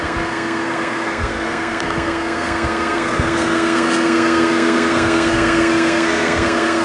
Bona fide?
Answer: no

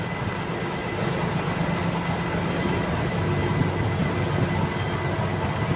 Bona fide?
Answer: yes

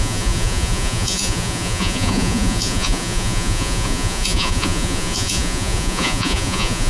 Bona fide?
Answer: no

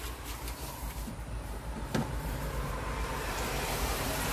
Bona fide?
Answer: no